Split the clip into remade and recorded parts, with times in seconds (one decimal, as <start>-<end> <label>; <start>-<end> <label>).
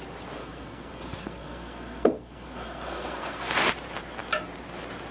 0.0-0.4 recorded; 0.4-3.5 remade; 3.5-5.1 recorded